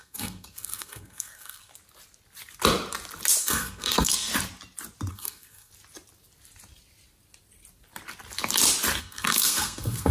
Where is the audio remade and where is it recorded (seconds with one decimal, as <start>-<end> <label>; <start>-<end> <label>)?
0.0-1.7 remade; 1.7-3.4 recorded; 3.4-4.3 remade; 4.3-5.1 recorded; 5.1-5.7 remade; 5.7-9.0 recorded; 9.0-10.1 remade